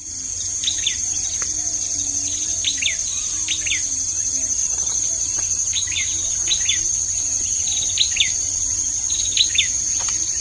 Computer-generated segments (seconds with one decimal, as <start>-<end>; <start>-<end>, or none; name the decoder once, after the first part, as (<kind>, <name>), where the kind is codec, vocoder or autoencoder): 4.6-5.3 (vocoder, Vocos)